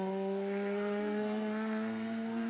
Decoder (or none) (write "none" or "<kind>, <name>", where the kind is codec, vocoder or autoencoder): codec, SNAC